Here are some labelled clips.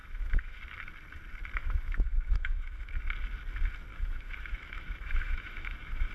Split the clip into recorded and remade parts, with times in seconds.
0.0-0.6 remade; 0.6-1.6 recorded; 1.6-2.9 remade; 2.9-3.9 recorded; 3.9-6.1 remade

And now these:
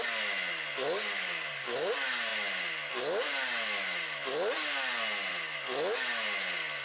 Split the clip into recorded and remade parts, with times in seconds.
0.0-1.0 recorded; 1.0-1.9 remade; 1.9-6.8 recorded

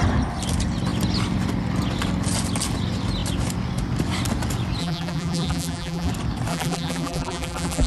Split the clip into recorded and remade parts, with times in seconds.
0.0-4.8 recorded; 4.8-6.1 remade; 6.1-6.5 recorded; 6.5-7.9 remade

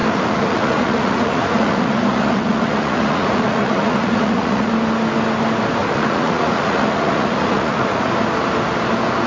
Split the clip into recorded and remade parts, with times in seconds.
0.0-4.7 remade; 4.7-5.8 recorded; 5.8-8.1 remade; 8.1-9.3 recorded